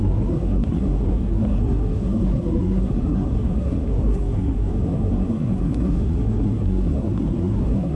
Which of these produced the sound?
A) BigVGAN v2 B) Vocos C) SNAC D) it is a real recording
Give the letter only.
C